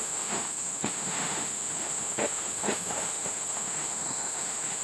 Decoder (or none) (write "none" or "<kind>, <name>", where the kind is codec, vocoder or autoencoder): autoencoder, DAC-VAE